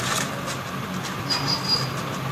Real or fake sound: real